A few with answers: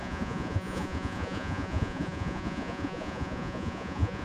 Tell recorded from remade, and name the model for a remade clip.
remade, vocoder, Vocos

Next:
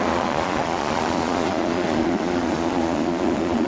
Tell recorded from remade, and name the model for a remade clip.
remade, vocoder, Vocos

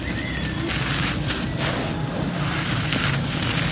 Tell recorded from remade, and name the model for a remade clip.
recorded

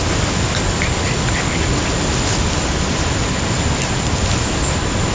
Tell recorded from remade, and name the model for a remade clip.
recorded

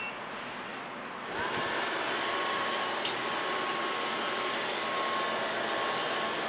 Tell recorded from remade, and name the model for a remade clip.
recorded